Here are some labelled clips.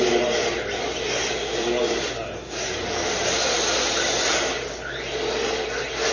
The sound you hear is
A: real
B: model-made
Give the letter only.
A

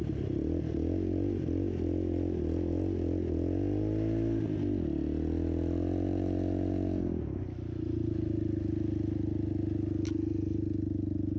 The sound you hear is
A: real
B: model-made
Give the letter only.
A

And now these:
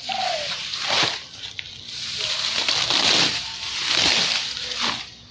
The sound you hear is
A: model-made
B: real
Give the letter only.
B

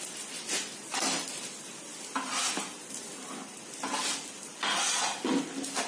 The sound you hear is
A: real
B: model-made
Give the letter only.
A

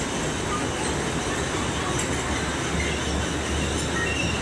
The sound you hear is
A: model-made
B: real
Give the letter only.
B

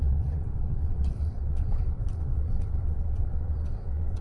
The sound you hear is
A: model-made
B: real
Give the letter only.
A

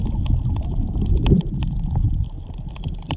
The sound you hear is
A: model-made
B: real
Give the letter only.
B